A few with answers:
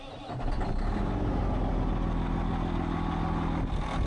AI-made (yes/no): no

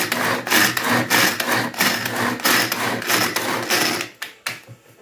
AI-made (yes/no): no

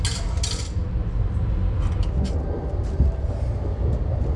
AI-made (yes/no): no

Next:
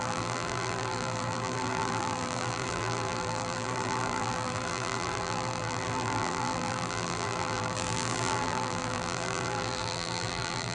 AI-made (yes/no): yes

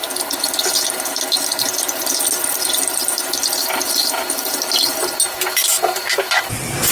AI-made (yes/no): no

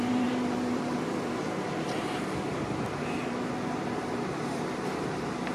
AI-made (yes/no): yes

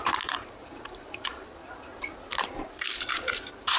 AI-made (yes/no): yes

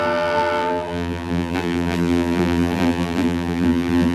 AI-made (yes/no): yes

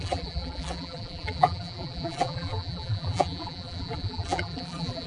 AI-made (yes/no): yes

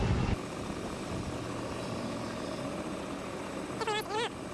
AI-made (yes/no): no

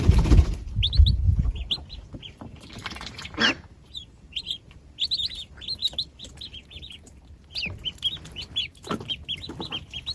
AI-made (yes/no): yes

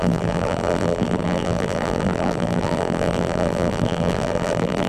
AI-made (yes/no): yes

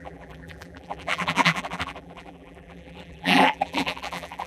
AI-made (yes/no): yes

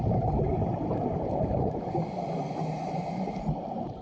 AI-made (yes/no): yes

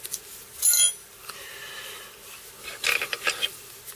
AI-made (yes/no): no